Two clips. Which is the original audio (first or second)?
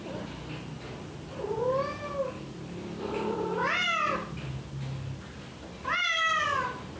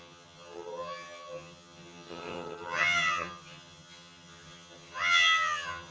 first